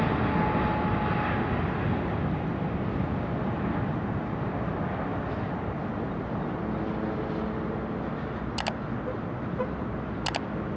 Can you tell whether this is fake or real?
real